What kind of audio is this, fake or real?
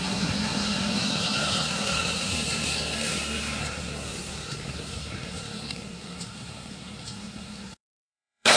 fake